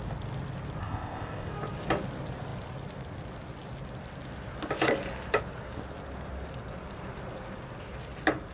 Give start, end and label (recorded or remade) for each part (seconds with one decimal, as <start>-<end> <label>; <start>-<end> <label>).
0.0-0.8 recorded; 0.8-1.5 remade; 1.5-8.5 recorded

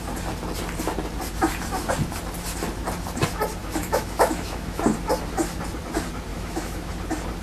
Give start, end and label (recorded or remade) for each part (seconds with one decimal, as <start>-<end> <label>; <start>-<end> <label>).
0.0-3.6 recorded; 3.6-4.8 remade; 4.8-6.3 recorded; 6.3-6.9 remade; 6.9-7.4 recorded

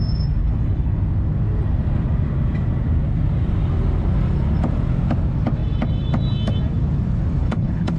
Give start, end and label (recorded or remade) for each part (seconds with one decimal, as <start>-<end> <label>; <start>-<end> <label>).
0.0-0.4 recorded; 0.4-1.0 remade; 1.0-7.4 recorded; 7.4-8.0 remade